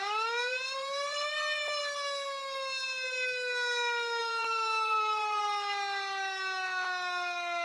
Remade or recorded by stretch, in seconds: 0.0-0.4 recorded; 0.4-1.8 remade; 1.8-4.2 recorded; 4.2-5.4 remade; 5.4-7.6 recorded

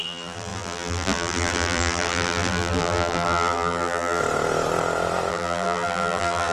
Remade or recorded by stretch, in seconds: 0.0-4.2 remade; 4.2-5.3 recorded; 5.3-6.5 remade

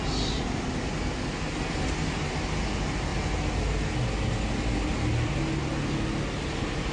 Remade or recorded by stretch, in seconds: 0.0-6.9 recorded

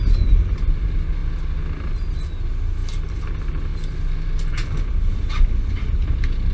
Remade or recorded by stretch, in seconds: 0.0-6.5 recorded

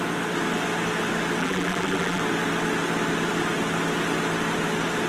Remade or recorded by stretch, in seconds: 0.0-1.4 recorded; 1.4-2.2 remade; 2.2-5.1 recorded

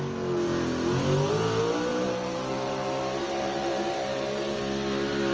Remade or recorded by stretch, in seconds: 0.0-1.9 recorded; 1.9-4.6 remade; 4.6-5.3 recorded

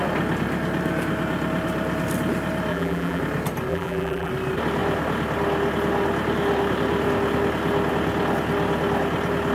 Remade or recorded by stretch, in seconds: 0.0-2.7 recorded; 2.7-3.2 remade; 3.2-3.7 recorded; 3.7-4.3 remade; 4.3-9.5 recorded

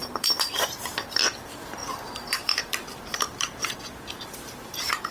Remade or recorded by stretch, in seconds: 0.0-0.8 remade; 0.8-1.8 recorded; 1.8-3.7 remade; 3.7-5.1 recorded